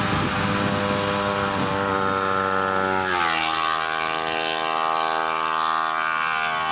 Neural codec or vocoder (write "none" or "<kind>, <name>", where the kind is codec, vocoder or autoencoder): none